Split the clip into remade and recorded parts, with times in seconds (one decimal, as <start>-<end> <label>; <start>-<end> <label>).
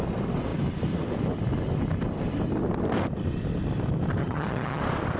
0.0-4.2 recorded; 4.2-4.8 remade; 4.8-5.2 recorded